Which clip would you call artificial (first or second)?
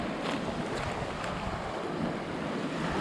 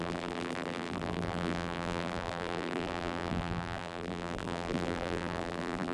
second